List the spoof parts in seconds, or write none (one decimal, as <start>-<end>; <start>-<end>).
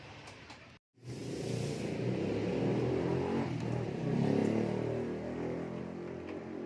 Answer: none